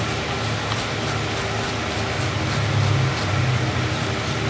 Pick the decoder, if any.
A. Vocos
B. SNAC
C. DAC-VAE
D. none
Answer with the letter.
D